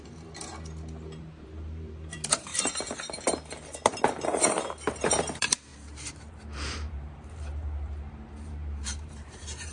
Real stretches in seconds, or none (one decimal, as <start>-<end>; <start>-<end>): 0.5-1.2; 2.5-4.0; 5.7-6.3